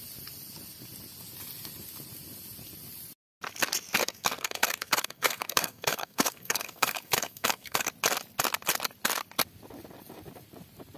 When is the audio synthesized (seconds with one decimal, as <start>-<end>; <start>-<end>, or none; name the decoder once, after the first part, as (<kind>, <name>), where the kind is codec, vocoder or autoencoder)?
4.0-7.9 (codec, SNAC)